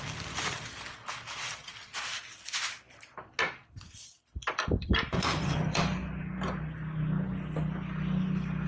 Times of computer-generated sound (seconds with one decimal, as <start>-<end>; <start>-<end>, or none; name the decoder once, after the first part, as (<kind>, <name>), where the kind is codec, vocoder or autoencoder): 0.0-1.9 (vocoder, BigVGAN v2); 3.5-6.0